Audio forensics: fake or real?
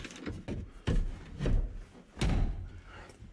real